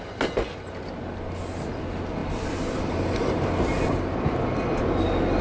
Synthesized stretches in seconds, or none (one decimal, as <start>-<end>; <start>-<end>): none